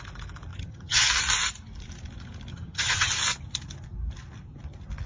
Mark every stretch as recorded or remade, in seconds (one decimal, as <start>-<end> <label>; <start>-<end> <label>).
0.0-0.5 recorded; 0.5-1.1 remade; 1.1-2.5 recorded; 2.5-3.1 remade; 3.1-5.1 recorded